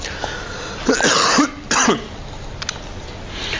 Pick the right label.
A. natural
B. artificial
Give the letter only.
A